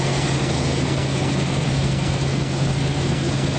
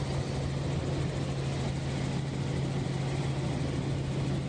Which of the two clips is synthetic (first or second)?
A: first